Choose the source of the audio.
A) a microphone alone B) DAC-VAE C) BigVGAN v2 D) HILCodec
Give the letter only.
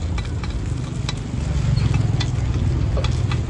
A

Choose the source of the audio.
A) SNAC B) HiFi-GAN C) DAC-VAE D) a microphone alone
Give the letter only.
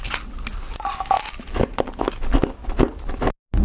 D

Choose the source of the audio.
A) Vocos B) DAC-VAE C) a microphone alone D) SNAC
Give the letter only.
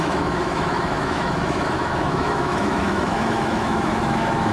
B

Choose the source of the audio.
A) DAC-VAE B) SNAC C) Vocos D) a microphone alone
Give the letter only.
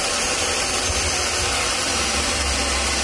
D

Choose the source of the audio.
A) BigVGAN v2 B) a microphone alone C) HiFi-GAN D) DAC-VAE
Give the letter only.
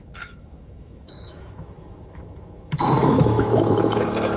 D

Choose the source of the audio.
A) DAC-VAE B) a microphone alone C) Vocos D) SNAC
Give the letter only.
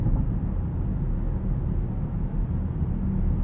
B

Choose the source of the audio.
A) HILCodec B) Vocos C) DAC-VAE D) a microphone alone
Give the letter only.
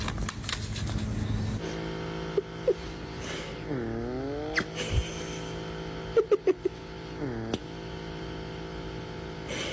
D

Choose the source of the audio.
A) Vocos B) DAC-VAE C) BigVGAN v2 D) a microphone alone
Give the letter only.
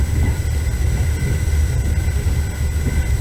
D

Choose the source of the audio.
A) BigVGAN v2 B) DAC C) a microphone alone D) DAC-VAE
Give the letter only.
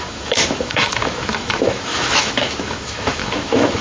D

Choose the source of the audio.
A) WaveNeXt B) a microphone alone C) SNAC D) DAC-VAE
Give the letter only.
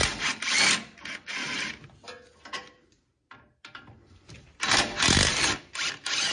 B